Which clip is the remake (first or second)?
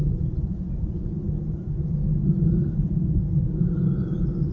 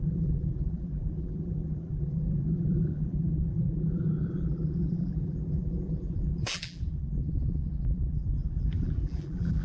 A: second